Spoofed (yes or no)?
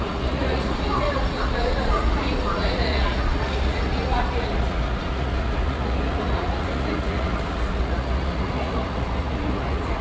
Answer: yes